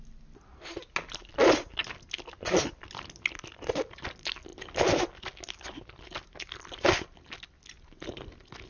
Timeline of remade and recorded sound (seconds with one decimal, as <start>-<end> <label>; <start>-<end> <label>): 0.0-8.7 recorded